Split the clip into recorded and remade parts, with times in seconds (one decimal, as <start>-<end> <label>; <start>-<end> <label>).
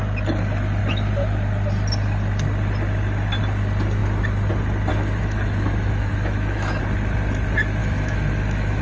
0.0-4.9 recorded; 4.9-6.8 remade; 6.8-7.8 recorded; 7.8-8.8 remade